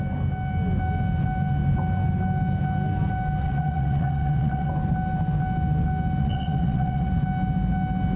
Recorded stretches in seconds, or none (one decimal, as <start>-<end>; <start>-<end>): 0.0-3.4; 4.7-6.2; 7.1-8.2